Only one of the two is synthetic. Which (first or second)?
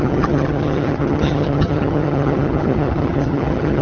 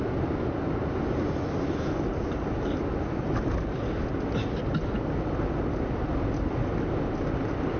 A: first